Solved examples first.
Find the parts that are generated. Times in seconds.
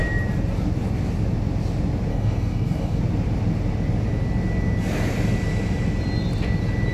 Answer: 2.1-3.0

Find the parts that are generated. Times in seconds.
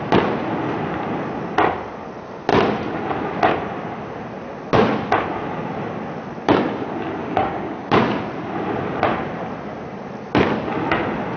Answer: 7.2-8.0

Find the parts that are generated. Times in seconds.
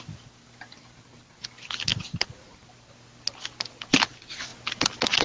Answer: none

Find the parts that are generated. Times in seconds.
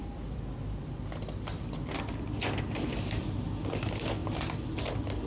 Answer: none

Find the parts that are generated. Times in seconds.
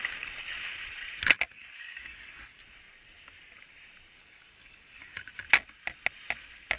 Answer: 1.5-2.6; 4.2-5.3